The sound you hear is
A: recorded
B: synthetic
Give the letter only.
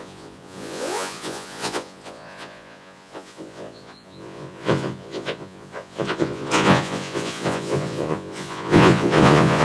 B